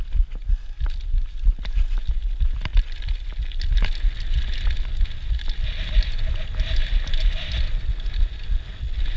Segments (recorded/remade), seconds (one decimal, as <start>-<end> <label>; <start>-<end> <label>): 0.0-9.2 recorded